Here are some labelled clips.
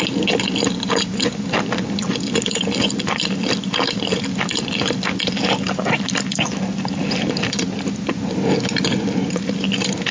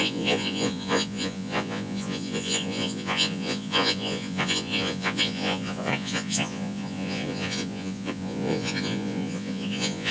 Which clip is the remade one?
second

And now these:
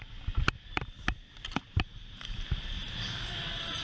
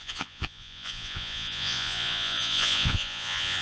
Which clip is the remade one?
second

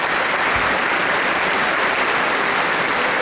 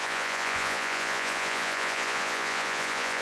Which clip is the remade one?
second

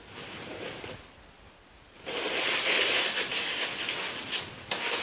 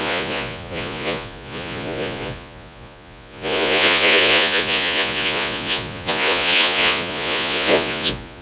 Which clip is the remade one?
second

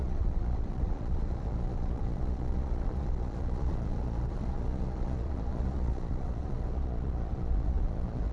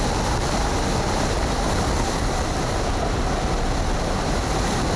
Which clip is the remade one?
first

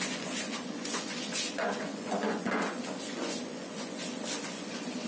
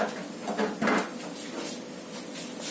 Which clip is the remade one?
first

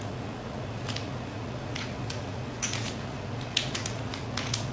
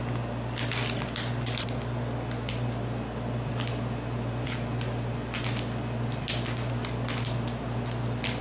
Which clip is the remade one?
first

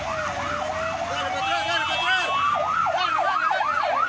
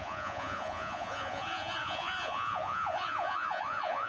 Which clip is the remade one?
second